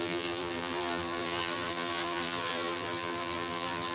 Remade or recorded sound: remade